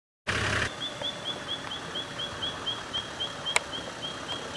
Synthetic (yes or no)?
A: no